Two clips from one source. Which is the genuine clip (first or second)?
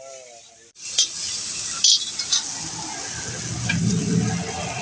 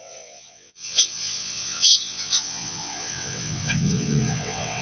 first